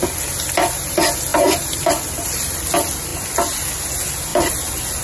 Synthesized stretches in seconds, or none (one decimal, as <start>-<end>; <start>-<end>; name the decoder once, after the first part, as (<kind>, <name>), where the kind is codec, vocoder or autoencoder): 1.3-2.7 (vocoder, BigVGAN v2); 3.1-3.7; 4.3-5.0